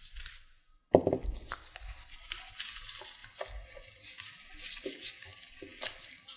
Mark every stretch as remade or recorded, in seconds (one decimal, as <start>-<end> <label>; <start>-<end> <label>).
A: 0.0-6.4 recorded

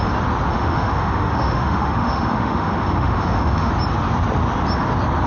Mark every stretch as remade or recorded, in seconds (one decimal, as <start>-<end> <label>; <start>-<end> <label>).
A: 0.0-0.5 recorded; 0.5-3.7 remade; 3.7-5.3 recorded